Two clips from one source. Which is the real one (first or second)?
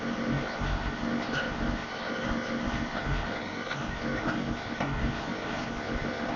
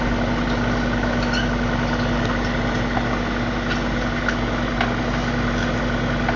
second